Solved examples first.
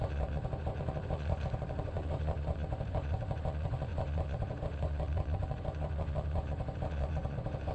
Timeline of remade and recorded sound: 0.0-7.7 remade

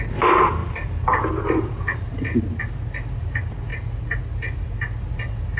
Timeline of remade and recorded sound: 0.0-5.6 recorded

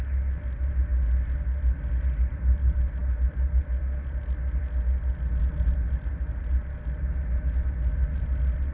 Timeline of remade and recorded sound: 0.0-8.7 recorded

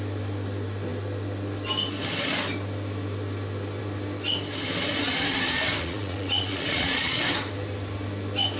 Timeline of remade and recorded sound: 0.0-5.8 recorded; 5.8-7.2 remade; 7.2-8.6 recorded

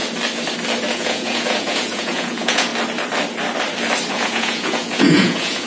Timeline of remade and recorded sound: 0.0-0.9 recorded; 0.9-2.7 remade; 2.7-4.1 recorded; 4.1-5.7 remade

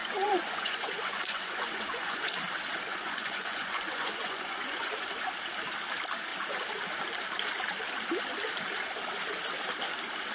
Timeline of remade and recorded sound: 0.0-2.3 remade; 2.3-2.9 recorded; 2.9-5.1 remade; 5.1-10.3 recorded